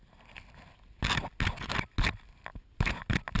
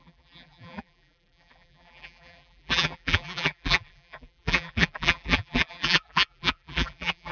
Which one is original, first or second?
first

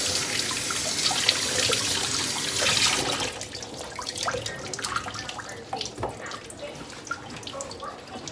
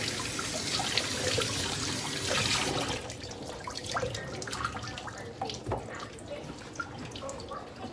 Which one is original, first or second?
first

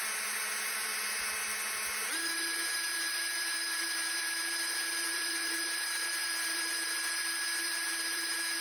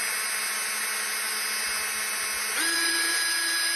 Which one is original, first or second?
second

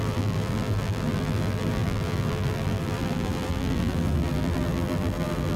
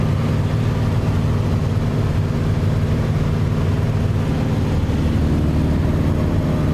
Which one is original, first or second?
second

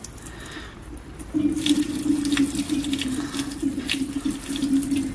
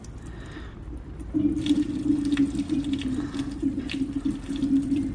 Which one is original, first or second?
first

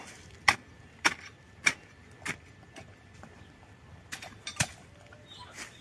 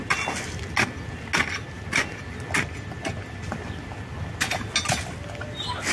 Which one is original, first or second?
second